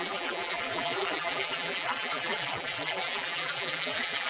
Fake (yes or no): yes